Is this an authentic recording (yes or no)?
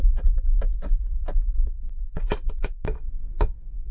yes